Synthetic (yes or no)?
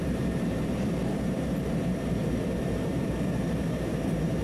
yes